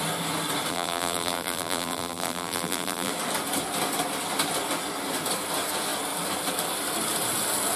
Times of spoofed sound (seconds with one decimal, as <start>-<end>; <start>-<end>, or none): 0.7-3.1